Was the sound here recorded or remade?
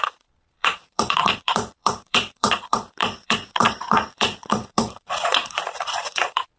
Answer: remade